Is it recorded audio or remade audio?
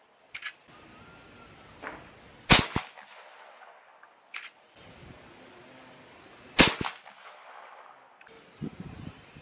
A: recorded